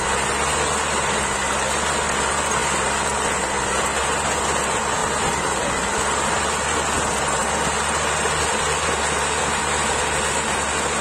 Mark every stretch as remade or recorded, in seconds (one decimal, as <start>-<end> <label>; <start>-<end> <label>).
0.0-11.0 recorded